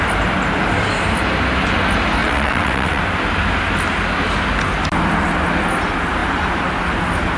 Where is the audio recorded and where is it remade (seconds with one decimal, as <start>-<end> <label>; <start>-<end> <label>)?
0.0-2.2 recorded; 2.2-3.0 remade; 3.0-7.4 recorded